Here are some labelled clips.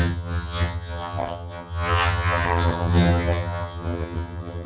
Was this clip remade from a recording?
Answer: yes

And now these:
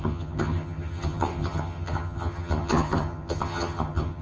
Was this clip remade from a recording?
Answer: yes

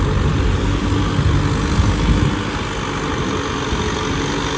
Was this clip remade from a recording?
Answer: no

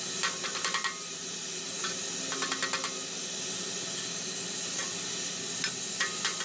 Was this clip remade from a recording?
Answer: no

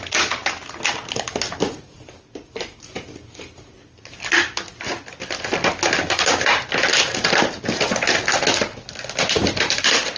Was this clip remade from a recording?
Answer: no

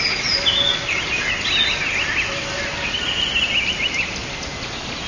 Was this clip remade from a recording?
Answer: no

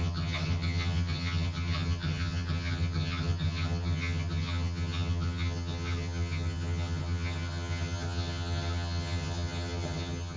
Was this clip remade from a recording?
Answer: yes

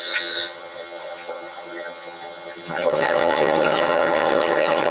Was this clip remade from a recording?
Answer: yes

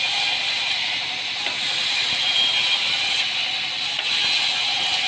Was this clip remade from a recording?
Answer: no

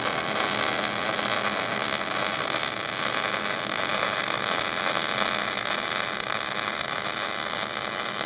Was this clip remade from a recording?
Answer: no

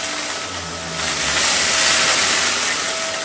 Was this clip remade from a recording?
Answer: no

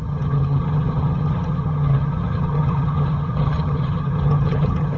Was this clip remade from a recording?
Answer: yes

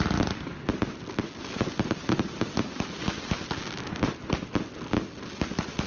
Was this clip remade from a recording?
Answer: no